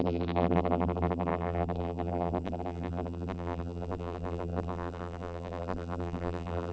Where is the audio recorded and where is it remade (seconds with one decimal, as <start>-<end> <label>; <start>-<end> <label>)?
0.0-6.7 remade